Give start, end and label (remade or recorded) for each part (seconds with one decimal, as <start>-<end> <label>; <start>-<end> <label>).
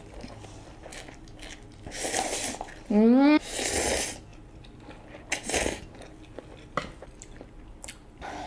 0.0-8.5 recorded